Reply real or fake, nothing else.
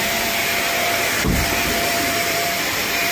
fake